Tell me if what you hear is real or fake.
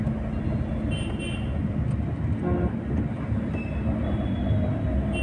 real